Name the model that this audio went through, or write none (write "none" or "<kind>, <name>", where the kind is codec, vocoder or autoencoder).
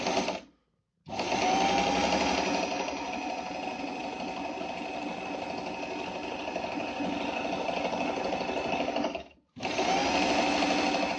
none